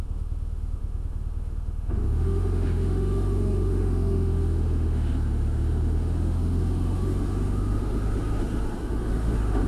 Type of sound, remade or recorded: remade